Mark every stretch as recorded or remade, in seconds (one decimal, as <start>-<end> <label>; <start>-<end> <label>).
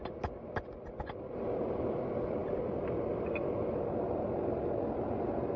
0.0-5.6 recorded